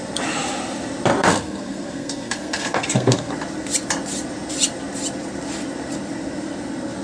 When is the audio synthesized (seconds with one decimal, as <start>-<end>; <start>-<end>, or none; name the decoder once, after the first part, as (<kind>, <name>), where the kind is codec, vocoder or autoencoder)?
1.3-3.3 (codec, SNAC)